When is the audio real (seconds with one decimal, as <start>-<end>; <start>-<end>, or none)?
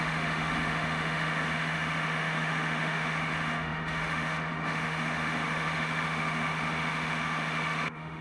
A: none